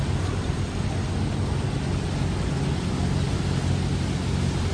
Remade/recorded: recorded